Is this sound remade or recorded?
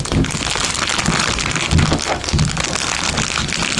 recorded